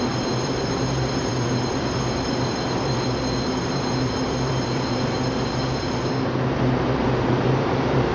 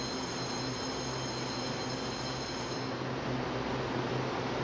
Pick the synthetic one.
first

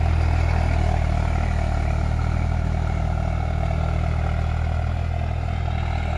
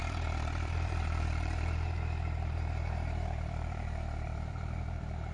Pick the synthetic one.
second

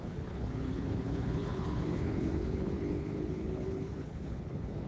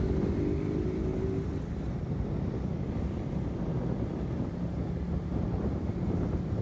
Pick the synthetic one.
first